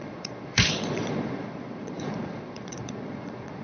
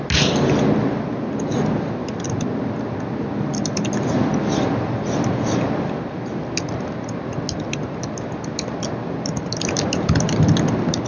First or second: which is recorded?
second